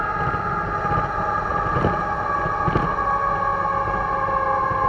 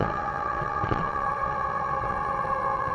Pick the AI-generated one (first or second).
second